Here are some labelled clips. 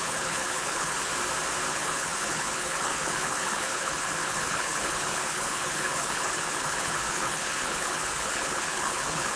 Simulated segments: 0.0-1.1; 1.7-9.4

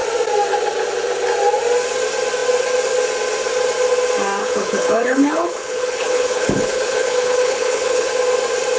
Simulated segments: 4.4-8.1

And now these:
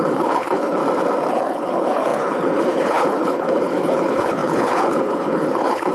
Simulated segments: 0.0-0.8; 1.3-5.9

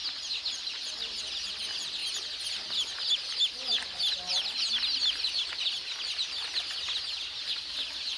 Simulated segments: none

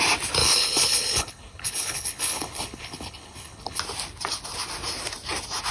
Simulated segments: 0.4-3.8

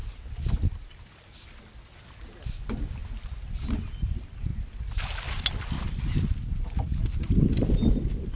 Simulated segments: none

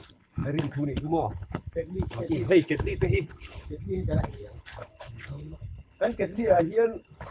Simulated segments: 0.0-7.3

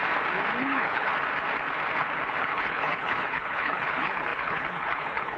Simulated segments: 0.6-1.1; 2.4-5.4